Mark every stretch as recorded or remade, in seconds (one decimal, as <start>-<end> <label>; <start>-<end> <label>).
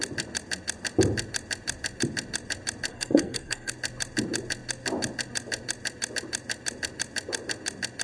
0.0-2.9 recorded; 2.9-3.7 remade; 3.7-8.0 recorded